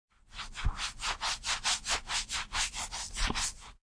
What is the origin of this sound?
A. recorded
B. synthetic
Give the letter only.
A